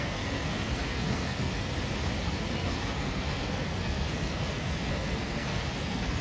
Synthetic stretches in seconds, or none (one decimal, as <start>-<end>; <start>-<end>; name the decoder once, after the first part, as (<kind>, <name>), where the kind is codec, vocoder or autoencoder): 0.0-1.7 (codec, SNAC); 2.2-6.2